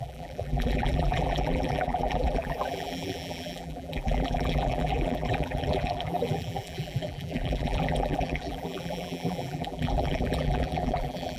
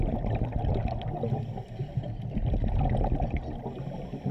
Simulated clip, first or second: first